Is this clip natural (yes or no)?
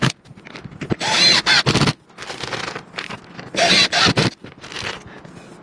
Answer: yes